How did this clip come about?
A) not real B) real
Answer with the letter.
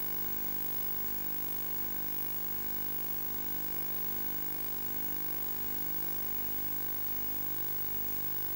B